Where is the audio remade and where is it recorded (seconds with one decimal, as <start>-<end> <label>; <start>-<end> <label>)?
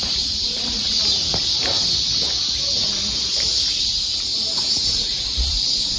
0.0-1.0 remade; 1.0-3.8 recorded; 3.8-4.3 remade; 4.3-4.9 recorded; 4.9-6.0 remade